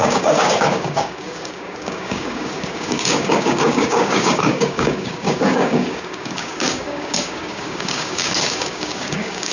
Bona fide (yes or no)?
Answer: no